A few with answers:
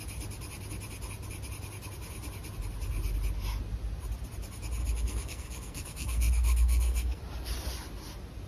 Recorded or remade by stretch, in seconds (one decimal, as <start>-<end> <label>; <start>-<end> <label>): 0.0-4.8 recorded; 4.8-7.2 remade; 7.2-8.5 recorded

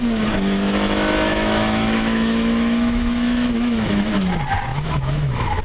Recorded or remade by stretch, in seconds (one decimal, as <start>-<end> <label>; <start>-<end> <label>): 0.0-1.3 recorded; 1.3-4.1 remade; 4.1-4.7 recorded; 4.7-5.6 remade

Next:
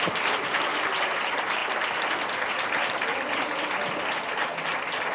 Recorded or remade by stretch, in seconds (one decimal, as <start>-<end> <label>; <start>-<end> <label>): 0.0-5.1 recorded

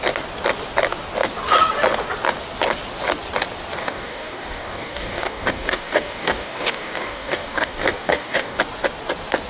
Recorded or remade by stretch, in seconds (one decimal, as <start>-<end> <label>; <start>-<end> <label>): 0.0-3.8 recorded; 3.8-8.6 remade; 8.6-9.5 recorded